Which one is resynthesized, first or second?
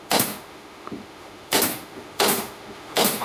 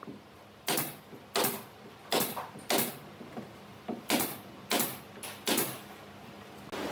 first